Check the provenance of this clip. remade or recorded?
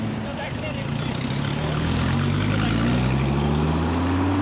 recorded